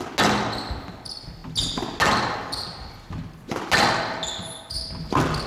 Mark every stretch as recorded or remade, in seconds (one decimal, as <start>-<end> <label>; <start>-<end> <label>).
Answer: 0.0-5.5 recorded